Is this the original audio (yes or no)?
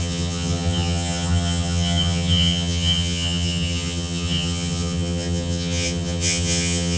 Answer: no